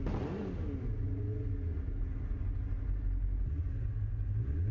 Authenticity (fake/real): real